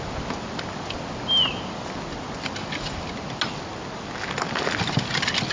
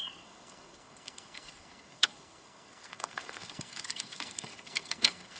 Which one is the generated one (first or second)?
second